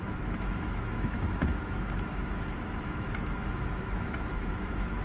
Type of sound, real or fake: fake